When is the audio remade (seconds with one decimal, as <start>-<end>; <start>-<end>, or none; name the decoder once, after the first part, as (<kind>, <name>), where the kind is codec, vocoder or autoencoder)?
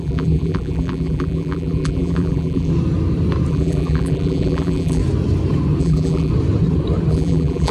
0.0-2.7 (vocoder, BigVGAN v2); 3.5-5.0; 5.8-6.3; 7.1-7.7